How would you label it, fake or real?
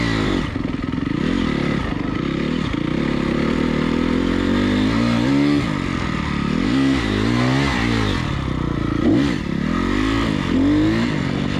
real